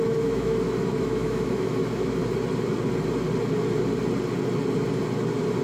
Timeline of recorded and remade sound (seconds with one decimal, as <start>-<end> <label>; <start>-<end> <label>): 0.0-2.2 remade; 2.2-5.6 recorded